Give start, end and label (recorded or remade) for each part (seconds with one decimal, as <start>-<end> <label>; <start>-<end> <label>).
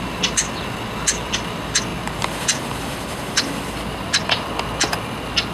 0.0-5.5 recorded